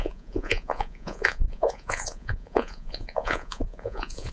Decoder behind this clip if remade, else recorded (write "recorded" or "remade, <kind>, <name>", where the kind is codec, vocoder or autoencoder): remade, vocoder, Vocos